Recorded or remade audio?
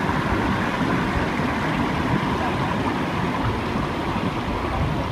recorded